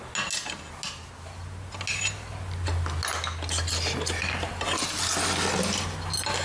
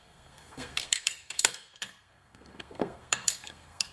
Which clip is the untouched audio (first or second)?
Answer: first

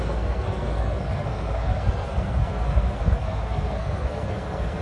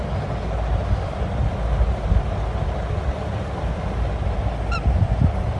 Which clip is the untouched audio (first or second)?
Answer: second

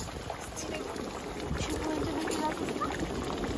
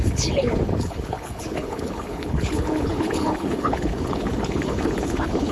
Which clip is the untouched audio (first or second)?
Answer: first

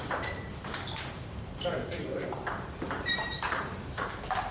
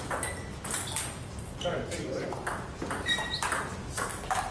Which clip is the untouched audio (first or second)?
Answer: second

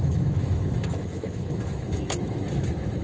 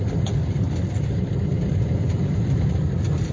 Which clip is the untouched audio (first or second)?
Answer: second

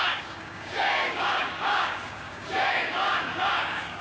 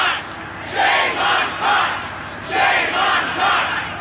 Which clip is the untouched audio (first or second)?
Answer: second